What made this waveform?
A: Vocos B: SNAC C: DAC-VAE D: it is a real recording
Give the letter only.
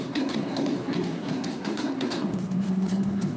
B